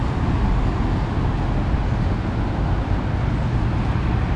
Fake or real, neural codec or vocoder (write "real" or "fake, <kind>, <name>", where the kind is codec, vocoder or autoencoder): real